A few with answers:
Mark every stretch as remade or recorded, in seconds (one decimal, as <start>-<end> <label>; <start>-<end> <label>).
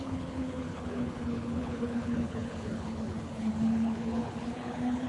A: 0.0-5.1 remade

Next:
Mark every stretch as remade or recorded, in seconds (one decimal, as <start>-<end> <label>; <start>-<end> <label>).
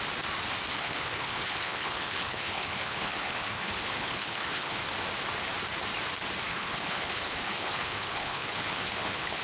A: 0.0-0.7 recorded; 0.7-4.8 remade; 4.8-6.5 recorded; 6.5-9.4 remade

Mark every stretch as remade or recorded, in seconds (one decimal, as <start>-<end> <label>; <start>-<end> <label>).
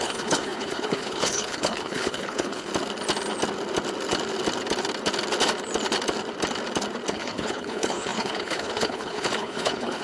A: 0.0-2.7 remade; 2.7-7.1 recorded; 7.1-10.0 remade